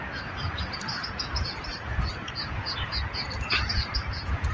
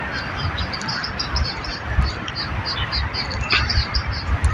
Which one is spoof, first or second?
first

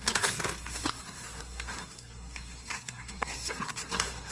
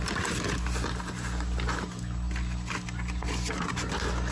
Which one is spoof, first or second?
first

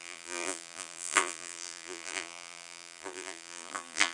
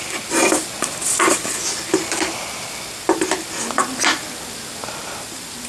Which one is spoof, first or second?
first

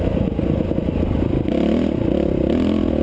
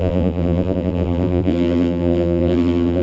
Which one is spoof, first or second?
second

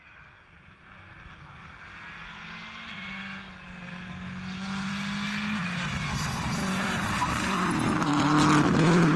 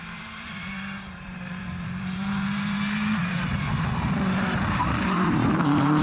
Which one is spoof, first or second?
second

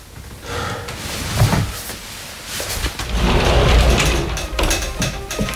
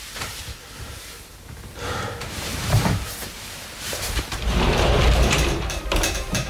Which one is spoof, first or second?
second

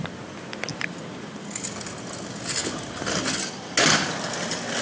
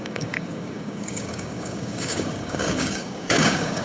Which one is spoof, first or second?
second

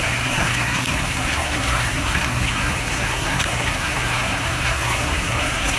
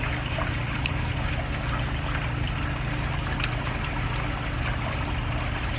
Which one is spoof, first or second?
first